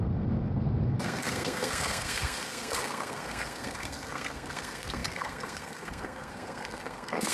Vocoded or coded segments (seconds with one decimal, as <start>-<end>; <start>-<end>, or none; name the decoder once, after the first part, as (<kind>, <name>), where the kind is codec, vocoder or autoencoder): 0.0-7.3 (codec, SNAC)